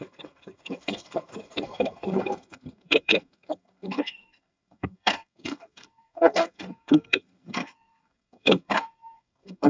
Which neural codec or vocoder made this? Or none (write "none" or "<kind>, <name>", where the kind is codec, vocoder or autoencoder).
codec, SNAC